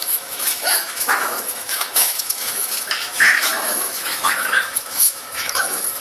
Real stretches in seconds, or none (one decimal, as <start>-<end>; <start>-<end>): none